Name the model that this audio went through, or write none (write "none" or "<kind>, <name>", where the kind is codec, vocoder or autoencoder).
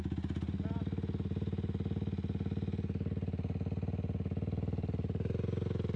none